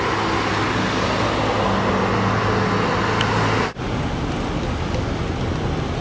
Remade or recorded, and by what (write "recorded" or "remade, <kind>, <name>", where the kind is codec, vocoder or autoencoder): recorded